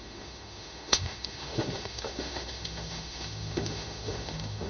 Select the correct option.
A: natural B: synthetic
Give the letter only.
B